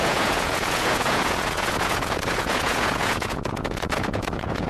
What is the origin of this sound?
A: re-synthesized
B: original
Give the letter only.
A